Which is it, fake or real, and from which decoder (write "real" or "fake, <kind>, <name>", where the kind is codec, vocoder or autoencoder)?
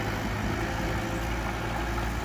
real